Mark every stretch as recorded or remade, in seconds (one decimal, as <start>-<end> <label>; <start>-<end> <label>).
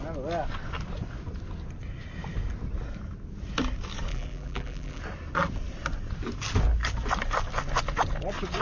0.0-4.1 recorded; 4.1-5.0 remade; 5.0-8.6 recorded